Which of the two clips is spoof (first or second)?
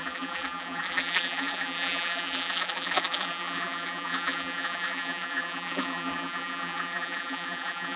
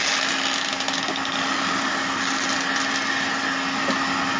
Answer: first